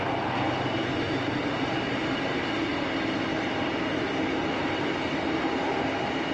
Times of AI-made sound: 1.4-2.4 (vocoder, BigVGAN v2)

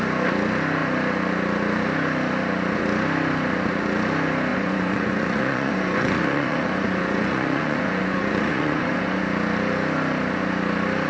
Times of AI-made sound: 4.5-9.2 (vocoder, Vocos)

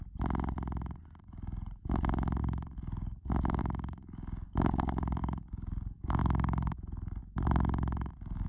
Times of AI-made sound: 1.2-8.5 (codec, DAC)

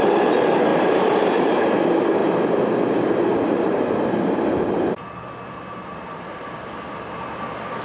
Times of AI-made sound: 0.7-1.6 (vocoder, BigVGAN v2)

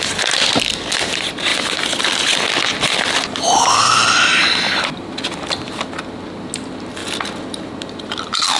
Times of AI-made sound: none

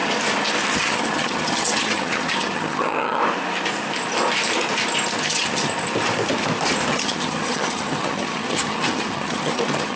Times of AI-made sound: 0.8-3.2 (vocoder, HiFi-GAN); 5.2-5.7; 6.9-10.0

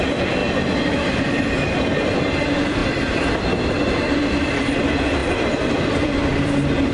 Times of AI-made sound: 0.0-0.4 (vocoder, BigVGAN v2); 2.4-6.9